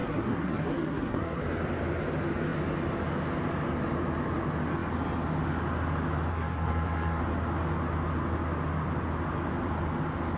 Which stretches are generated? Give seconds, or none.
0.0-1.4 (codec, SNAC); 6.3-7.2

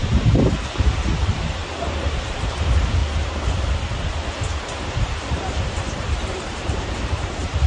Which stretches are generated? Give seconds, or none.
1.2-3.0 (vocoder, BigVGAN v2); 4.9-7.7

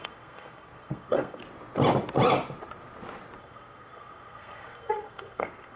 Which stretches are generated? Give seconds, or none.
0.0-1.4 (codec, SNAC); 3.4-5.8

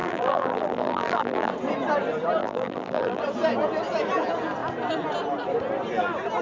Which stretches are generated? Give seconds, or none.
0.0-1.5 (vocoder, BigVGAN v2); 2.4-3.2

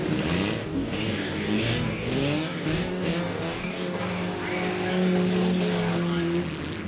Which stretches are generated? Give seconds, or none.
0.6-4.0 (codec, DAC)

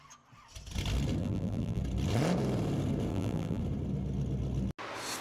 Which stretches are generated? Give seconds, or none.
1.2-1.8 (vocoder, BigVGAN v2); 3.1-3.6